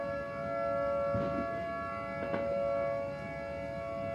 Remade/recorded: recorded